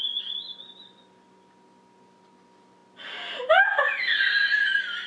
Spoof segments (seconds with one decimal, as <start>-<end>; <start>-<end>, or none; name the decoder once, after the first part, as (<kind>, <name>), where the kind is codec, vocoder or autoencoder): none